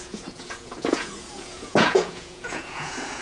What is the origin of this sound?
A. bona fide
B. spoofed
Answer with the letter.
B